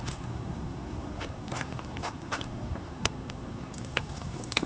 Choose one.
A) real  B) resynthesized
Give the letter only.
B